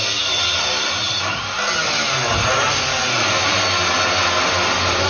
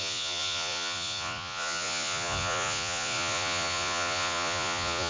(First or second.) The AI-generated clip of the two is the second